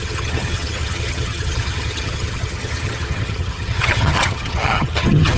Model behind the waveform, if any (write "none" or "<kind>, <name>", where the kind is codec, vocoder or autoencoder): vocoder, HiFi-GAN